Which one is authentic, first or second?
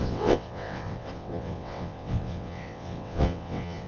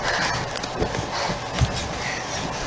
second